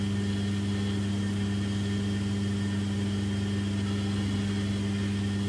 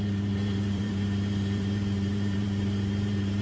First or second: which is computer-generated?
second